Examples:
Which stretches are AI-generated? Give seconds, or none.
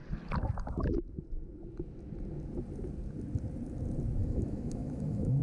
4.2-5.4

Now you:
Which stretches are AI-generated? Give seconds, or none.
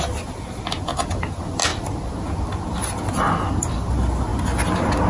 none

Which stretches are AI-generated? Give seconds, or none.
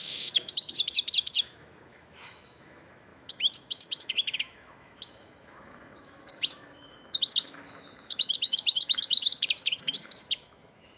0.0-11.0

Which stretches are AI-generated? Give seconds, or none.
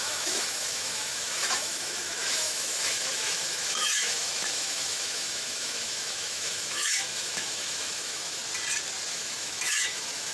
0.0-8.4; 9.1-10.3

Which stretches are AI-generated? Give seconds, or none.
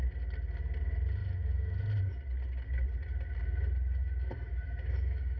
1.2-2.0; 4.0-5.4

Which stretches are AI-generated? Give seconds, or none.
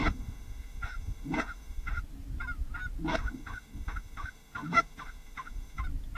0.0-2.0; 3.1-5.8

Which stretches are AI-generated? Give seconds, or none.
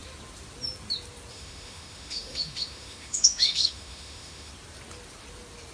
1.3-4.5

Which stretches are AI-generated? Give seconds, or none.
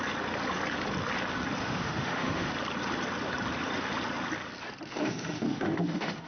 1.6-2.5; 4.9-6.3